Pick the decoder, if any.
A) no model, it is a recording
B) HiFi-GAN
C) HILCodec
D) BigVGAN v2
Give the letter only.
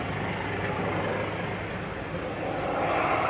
A